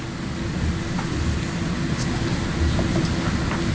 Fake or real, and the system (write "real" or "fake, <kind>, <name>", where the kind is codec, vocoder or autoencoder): real